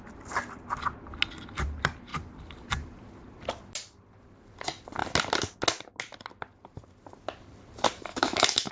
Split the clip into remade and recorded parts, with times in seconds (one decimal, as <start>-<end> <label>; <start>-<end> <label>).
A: 0.0-8.1 recorded; 8.1-8.7 remade